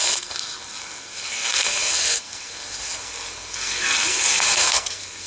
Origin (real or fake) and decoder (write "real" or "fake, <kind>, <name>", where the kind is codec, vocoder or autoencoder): fake, codec, SNAC